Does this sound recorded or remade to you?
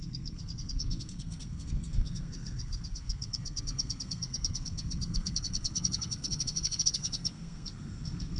remade